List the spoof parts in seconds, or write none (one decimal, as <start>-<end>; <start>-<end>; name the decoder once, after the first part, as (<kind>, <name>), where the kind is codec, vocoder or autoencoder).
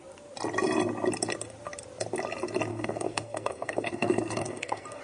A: 2.7-5.0 (codec, SNAC)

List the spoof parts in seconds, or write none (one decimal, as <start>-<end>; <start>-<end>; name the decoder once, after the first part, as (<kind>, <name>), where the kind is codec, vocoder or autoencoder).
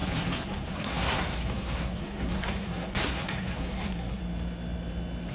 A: 0.0-4.2 (codec, SNAC)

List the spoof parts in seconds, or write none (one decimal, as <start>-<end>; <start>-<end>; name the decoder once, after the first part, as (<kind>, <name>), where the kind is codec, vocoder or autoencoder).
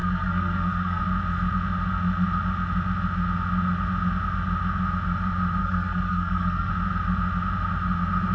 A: 0.0-1.0 (codec, SNAC); 5.6-6.7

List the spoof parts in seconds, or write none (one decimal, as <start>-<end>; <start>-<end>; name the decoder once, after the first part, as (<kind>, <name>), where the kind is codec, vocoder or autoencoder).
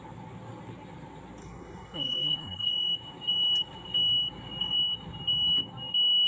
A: 1.4-2.7 (codec, SNAC)